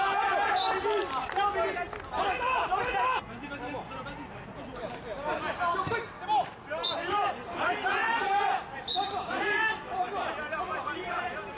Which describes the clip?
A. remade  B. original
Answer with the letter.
B